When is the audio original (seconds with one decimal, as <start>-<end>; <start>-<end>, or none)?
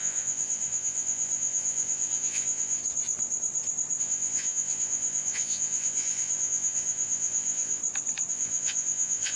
2.8-4.0; 7.8-8.3